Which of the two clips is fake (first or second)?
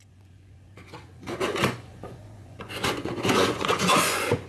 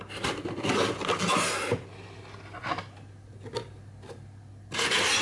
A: first